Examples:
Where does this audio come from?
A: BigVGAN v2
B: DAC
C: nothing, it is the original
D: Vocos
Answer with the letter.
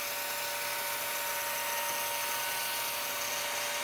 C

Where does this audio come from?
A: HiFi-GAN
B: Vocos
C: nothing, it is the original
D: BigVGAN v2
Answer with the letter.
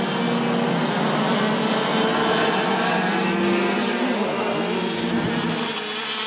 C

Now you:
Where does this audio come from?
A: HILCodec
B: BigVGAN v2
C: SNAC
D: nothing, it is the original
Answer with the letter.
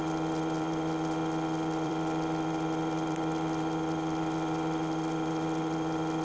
B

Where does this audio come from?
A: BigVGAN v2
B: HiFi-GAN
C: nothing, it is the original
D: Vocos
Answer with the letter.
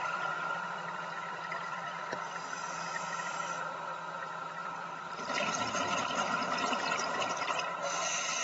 A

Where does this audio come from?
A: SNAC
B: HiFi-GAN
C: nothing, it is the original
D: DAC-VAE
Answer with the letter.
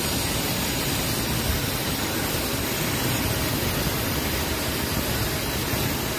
C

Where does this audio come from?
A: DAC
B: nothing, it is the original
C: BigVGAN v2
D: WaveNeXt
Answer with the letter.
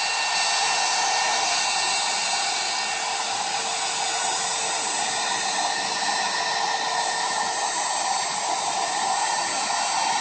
B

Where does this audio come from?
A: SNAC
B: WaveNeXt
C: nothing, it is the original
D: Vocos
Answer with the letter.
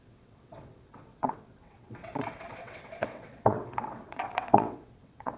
B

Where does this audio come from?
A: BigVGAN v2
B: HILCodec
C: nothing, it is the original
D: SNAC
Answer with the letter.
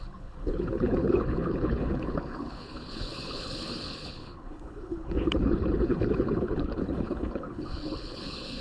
B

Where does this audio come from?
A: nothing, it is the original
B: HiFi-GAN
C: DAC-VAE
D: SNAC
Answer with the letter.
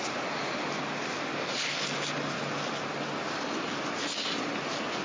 A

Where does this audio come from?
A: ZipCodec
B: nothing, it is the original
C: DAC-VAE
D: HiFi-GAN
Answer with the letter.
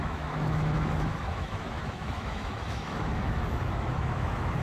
C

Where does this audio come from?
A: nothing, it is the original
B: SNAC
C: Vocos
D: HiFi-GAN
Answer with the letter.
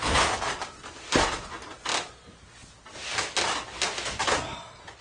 A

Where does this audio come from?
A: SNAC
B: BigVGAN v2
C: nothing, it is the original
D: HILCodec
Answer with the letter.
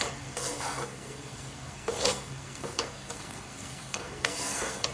A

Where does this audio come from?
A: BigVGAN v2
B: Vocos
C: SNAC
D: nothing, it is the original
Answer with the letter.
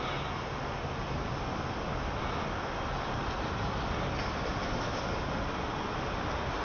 D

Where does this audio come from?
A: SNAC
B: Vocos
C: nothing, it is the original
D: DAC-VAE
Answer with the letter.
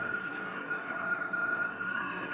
A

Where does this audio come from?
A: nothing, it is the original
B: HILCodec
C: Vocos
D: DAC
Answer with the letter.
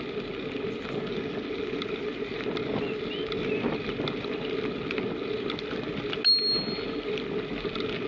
A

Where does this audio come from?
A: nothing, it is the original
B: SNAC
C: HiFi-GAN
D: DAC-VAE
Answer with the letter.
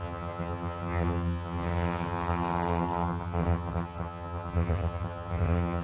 C